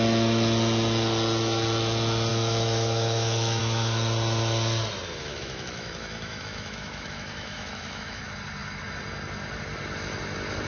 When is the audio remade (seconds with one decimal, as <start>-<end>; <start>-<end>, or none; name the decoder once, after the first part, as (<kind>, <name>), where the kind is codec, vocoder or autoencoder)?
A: 2.3-3.6 (autoencoder, DAC-VAE); 5.2-8.2